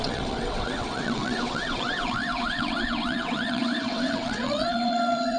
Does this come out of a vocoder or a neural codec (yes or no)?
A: yes